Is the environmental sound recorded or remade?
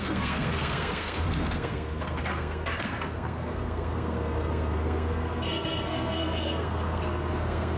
remade